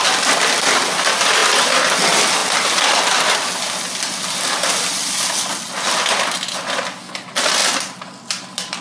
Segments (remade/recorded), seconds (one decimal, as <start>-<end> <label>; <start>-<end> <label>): 0.0-8.8 recorded